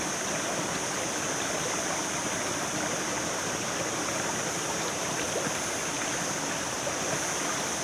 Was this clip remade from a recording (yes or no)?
no